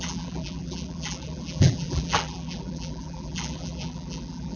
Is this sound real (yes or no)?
no